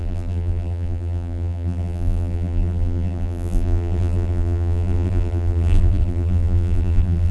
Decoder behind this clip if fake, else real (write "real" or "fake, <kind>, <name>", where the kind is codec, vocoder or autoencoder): fake, vocoder, BigVGAN v2